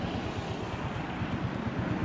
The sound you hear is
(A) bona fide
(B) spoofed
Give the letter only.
A